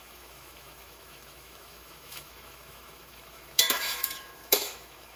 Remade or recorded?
remade